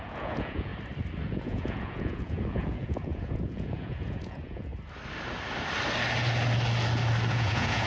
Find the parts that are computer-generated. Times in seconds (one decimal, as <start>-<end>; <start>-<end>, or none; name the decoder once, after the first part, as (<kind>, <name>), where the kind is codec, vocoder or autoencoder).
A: 0.0-0.7 (vocoder, Vocos); 1.3-4.7; 7.3-7.9